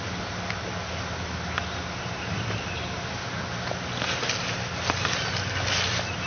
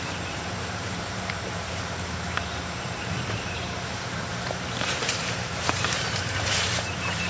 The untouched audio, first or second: first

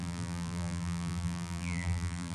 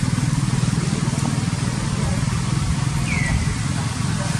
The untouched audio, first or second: second